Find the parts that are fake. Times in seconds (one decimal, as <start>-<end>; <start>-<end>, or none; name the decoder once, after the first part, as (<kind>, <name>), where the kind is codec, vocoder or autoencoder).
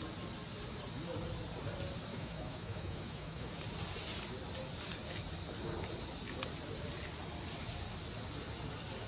2.1-3.6 (autoencoder, DAC-VAE)